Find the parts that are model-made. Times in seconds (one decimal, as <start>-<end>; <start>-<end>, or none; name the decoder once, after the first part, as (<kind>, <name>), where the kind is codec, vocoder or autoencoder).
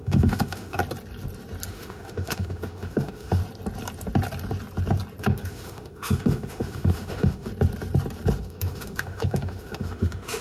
0.0-0.8 (autoencoder, DAC-VAE); 1.7-3.4; 5.2-7.5; 8.4-10.4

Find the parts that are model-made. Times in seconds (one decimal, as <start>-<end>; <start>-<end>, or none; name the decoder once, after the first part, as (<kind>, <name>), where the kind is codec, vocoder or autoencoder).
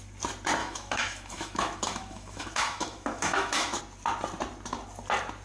0.6-3.8 (autoencoder, DAC-VAE)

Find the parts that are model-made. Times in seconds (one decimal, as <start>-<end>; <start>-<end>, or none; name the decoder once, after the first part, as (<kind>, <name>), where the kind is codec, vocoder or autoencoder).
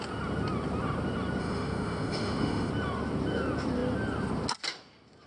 1.4-2.7 (autoencoder, DAC-VAE)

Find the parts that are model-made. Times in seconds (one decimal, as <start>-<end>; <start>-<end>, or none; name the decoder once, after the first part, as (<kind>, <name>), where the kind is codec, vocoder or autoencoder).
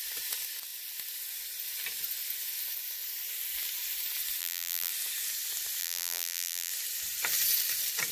4.4-4.9 (vocoder, BigVGAN v2); 5.8-6.7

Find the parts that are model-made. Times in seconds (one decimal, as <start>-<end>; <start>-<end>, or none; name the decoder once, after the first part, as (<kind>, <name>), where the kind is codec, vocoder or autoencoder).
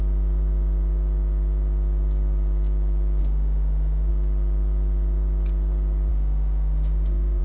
3.2-4.1 (autoencoder, DAC-VAE); 6.1-7.4